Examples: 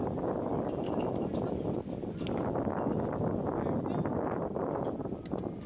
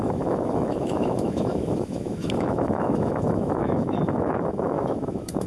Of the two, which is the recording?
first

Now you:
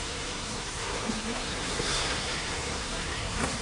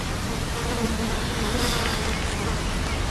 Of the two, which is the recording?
second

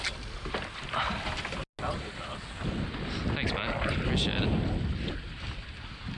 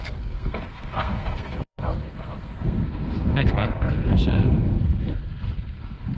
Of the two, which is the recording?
first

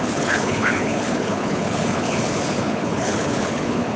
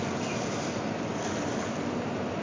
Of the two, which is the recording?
second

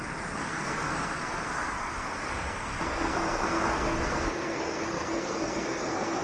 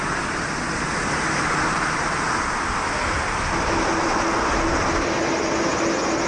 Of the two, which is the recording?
second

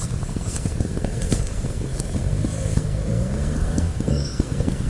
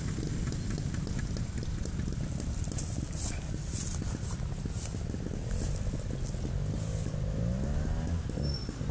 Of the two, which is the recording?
second